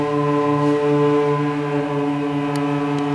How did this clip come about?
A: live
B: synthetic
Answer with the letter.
A